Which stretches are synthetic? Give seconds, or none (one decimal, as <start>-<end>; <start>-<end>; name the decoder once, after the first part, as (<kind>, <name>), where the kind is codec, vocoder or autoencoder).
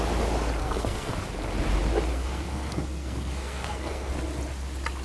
0.6-1.1 (codec, SNAC); 2.1-4.1